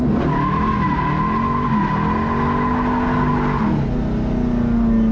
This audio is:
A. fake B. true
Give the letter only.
B